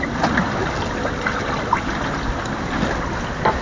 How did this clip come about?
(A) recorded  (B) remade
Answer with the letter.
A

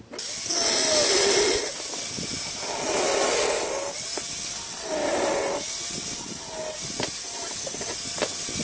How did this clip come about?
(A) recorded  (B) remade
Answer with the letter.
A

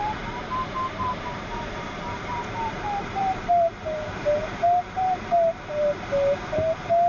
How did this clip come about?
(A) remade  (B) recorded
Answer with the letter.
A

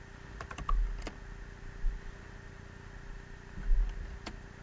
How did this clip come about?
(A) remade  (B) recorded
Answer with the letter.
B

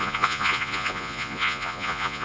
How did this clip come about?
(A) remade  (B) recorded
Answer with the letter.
A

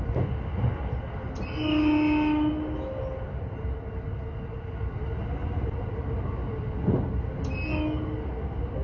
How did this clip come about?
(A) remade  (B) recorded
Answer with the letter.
B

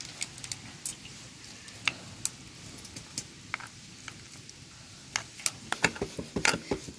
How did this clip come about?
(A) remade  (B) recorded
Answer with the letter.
B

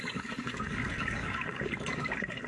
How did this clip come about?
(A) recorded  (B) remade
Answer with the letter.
B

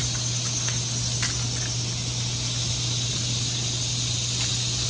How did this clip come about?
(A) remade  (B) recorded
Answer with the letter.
B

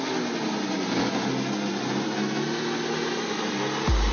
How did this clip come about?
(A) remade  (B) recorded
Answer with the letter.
B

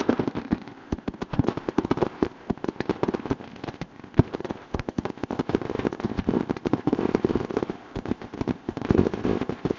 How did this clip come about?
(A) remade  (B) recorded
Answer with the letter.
A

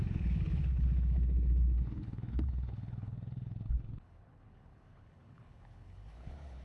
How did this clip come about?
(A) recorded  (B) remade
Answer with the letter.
B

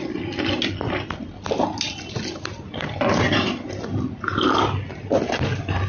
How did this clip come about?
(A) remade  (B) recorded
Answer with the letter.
B